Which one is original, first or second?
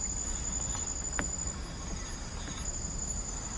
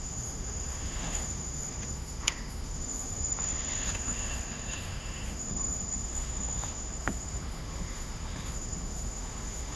first